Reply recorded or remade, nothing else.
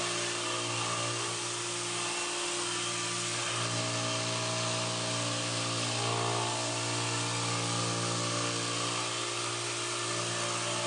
recorded